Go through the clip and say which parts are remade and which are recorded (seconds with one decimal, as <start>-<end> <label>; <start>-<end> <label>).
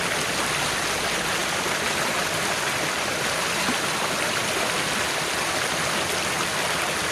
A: 0.0-7.1 recorded